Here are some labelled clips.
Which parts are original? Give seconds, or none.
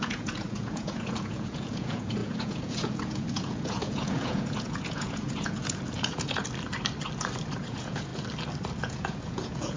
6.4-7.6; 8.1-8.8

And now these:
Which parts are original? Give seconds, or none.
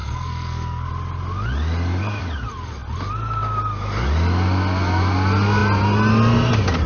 0.9-6.9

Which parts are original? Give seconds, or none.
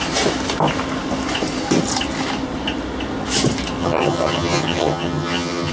0.0-3.8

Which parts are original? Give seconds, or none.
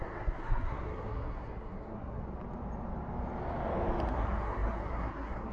2.2-4.1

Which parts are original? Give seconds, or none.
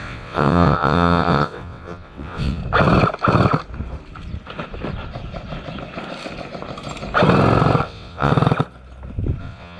2.6-7.8; 8.3-9.4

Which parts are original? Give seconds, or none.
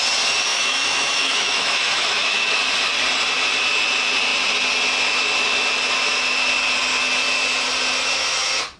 0.0-0.5; 2.6-8.8